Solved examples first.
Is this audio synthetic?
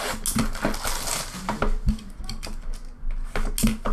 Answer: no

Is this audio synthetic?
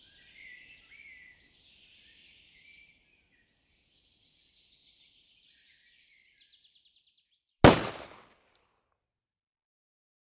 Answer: no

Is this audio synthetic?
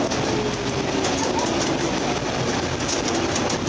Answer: no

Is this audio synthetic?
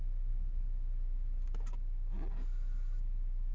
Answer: no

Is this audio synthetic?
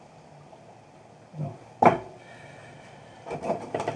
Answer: no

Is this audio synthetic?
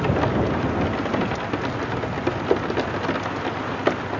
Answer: no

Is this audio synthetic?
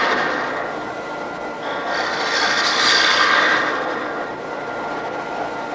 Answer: no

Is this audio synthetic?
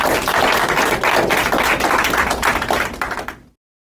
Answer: no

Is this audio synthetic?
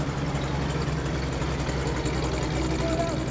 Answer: no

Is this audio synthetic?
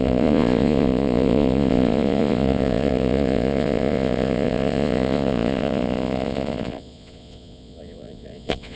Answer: yes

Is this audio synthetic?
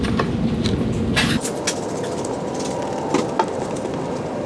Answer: no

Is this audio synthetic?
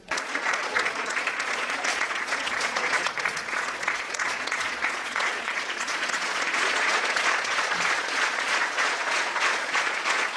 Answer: yes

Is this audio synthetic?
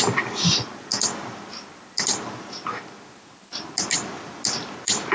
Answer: no